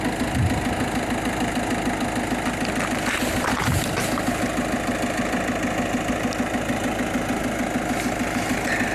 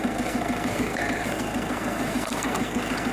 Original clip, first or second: first